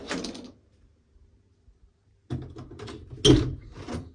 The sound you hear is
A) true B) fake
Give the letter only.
A